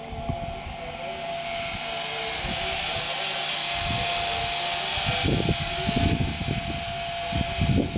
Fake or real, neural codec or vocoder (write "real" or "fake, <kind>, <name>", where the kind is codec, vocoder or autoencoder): real